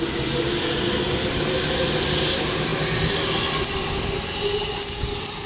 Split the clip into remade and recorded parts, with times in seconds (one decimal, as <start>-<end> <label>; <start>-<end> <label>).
0.0-5.5 recorded